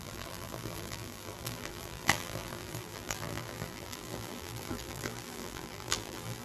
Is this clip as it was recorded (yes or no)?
no